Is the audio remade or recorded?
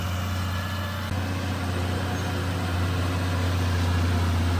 recorded